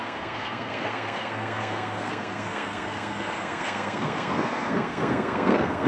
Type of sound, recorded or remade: remade